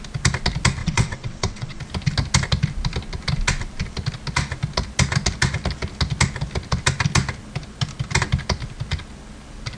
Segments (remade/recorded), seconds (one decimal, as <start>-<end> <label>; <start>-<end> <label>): 0.0-0.8 recorded; 0.8-1.8 remade; 1.8-9.8 recorded